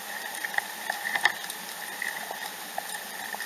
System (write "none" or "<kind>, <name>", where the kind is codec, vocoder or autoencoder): vocoder, BigVGAN v2